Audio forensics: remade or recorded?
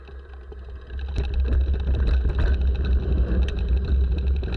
recorded